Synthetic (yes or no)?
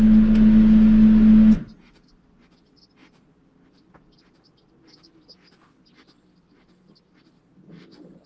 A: no